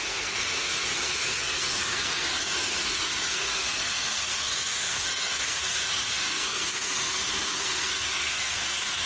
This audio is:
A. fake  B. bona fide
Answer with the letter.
A